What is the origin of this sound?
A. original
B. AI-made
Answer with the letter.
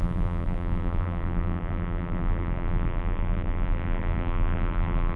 B